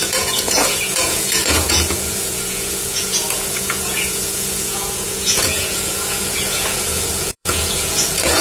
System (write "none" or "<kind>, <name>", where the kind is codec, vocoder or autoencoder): vocoder, Vocos